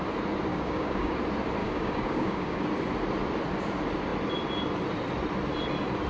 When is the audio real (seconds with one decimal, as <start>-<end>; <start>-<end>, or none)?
0.0-0.5; 1.2-1.6; 2.6-6.1